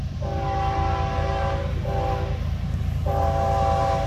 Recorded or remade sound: recorded